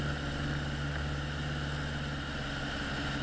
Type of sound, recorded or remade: recorded